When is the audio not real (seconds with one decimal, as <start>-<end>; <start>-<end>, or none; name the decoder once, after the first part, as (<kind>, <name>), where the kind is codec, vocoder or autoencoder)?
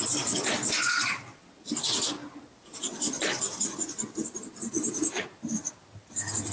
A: none